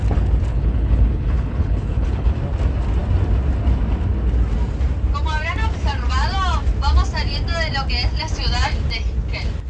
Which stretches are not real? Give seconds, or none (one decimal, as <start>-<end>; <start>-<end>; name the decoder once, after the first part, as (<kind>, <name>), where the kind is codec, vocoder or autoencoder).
0.5-2.3 (codec, HILCodec)